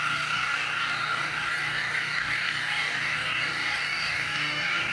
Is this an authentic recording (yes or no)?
no